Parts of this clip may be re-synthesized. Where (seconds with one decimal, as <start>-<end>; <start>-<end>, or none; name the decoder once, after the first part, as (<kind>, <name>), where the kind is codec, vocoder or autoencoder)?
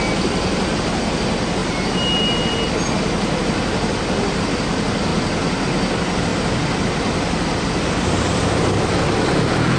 5.1-5.6 (vocoder, BigVGAN v2); 6.3-9.1